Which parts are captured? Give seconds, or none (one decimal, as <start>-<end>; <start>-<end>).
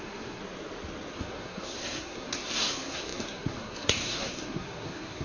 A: 0.4-1.1